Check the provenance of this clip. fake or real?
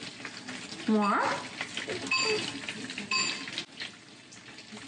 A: real